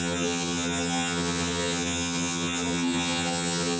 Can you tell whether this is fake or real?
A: fake